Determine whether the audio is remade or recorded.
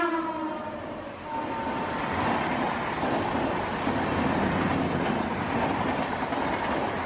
recorded